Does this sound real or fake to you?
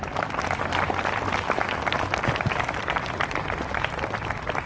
real